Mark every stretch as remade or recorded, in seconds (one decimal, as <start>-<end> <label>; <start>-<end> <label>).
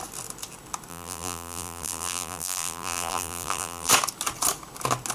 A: 0.0-0.9 recorded; 0.9-3.9 remade; 3.9-5.1 recorded